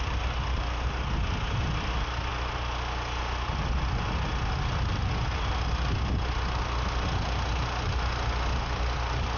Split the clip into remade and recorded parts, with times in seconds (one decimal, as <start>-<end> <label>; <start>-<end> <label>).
0.0-9.4 recorded